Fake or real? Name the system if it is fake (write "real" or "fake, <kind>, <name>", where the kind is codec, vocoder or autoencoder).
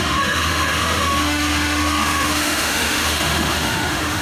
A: fake, autoencoder, DAC-VAE